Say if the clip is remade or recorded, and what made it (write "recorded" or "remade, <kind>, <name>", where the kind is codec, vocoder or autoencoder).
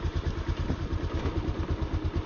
recorded